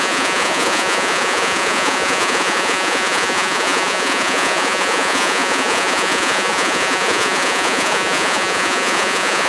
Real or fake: fake